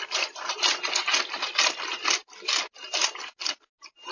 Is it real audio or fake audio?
real